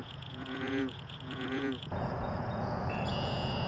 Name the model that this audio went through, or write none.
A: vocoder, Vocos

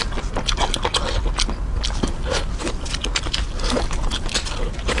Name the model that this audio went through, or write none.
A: none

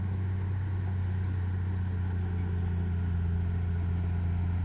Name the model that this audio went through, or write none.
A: none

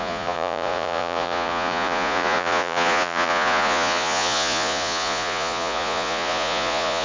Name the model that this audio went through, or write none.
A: vocoder, Vocos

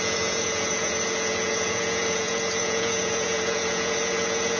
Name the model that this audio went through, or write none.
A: vocoder, Vocos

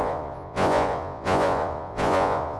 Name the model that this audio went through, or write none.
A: vocoder, Vocos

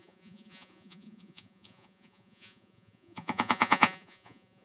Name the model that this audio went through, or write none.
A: vocoder, Vocos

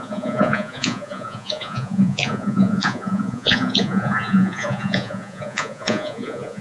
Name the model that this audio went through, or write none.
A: vocoder, Vocos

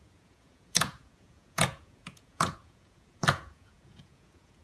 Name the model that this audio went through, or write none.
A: vocoder, Vocos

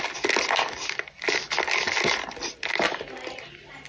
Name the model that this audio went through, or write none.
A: none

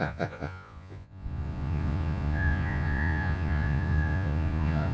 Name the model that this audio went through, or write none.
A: vocoder, Vocos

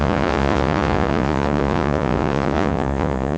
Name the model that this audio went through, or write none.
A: vocoder, Vocos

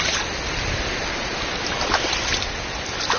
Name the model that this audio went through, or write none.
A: none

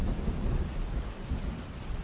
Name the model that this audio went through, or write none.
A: none